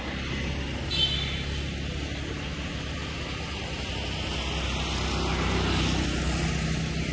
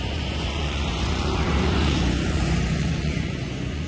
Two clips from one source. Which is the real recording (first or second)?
first